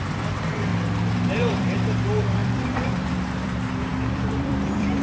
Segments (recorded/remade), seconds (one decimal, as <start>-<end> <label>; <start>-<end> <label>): 0.0-0.7 remade; 0.7-1.3 recorded; 1.3-5.0 remade